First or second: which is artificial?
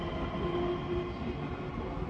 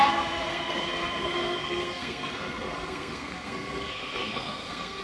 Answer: second